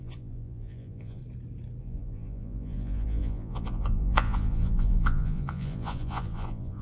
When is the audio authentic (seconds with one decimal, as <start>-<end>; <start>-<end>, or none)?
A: 1.2-1.8